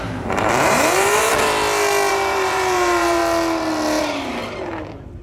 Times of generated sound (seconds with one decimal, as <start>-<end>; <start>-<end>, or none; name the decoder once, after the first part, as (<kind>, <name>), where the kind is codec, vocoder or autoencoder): 0.0-1.3 (vocoder, BigVGAN v2); 2.1-3.2; 4.0-4.4